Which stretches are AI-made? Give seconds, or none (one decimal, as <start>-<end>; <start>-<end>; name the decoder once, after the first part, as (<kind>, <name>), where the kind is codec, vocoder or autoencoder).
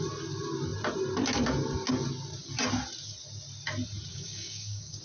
4.1-5.0 (codec, DAC)